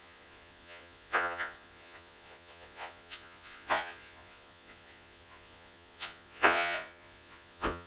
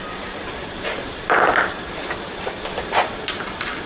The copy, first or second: first